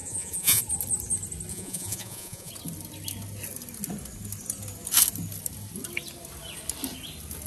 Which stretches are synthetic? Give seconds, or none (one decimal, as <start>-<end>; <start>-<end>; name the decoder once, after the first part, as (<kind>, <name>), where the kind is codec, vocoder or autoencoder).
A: 0.0-0.6 (vocoder, Vocos); 1.5-2.5